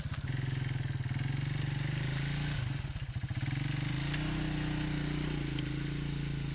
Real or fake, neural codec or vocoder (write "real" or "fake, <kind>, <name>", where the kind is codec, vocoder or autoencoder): real